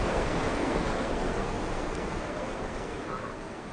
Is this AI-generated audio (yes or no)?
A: yes